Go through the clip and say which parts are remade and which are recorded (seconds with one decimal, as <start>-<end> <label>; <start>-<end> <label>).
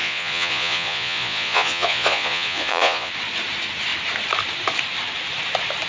0.0-3.1 remade; 3.1-5.9 recorded